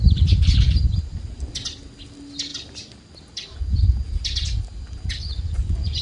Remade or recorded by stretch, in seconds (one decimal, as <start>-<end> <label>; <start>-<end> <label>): 0.0-5.3 recorded; 5.3-6.0 remade